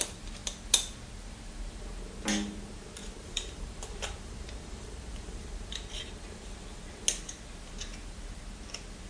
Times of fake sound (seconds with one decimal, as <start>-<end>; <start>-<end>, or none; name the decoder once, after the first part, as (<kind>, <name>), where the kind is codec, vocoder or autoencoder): 3.0-6.6 (vocoder, BigVGAN v2)